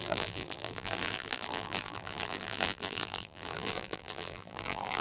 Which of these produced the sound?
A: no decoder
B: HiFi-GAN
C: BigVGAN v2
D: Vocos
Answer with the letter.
C